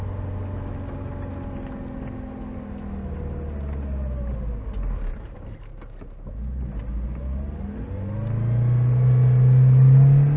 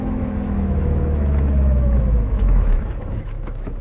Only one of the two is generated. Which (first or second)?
second